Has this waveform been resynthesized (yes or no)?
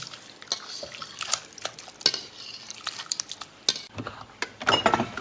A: no